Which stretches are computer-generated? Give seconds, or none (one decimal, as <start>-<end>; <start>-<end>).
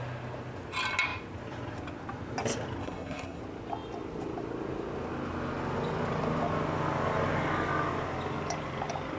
2.8-3.4